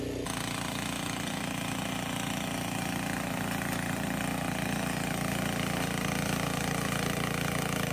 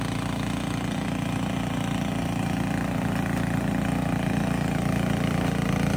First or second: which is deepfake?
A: second